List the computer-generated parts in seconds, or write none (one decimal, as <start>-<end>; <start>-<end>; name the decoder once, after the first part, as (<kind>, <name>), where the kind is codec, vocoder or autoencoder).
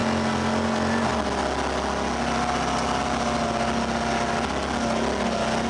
none